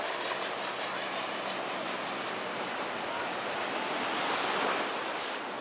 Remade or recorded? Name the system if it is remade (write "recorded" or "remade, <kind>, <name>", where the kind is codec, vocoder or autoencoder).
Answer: recorded